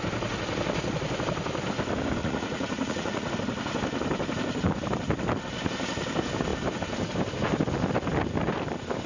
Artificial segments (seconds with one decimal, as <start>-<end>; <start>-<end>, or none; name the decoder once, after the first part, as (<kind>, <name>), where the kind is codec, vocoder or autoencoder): 2.2-3.3 (vocoder, Vocos)